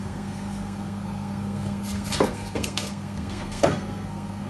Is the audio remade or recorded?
remade